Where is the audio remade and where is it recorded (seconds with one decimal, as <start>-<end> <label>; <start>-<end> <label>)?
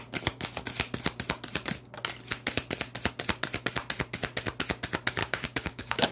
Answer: 0.0-5.2 recorded; 5.2-6.1 remade